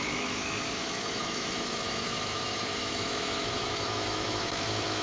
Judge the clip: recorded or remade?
remade